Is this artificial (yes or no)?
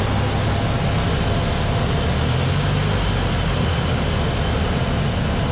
no